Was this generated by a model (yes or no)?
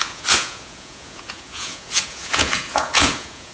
yes